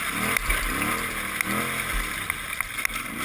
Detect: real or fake real